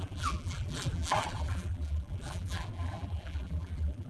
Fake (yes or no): yes